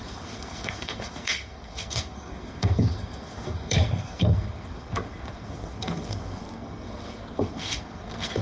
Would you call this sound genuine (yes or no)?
no